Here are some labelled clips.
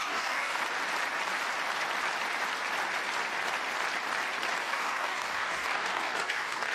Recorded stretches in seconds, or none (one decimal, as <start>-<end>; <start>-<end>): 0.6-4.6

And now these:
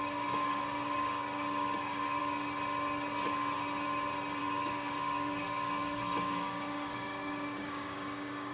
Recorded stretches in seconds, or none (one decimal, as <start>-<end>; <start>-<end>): 2.2-4.4

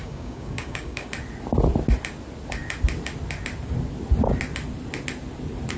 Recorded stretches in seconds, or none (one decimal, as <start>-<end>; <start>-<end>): 1.1-5.8

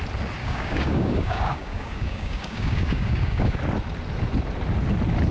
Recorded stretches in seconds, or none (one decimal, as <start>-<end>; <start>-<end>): 0.0-0.4; 3.6-5.3

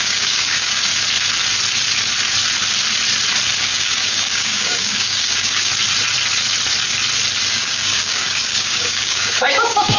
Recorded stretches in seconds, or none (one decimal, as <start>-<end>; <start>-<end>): 0.9-3.6; 5.7-7.5

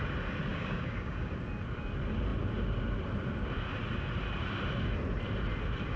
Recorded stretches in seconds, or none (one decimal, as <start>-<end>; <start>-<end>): 0.0-0.5; 1.3-6.0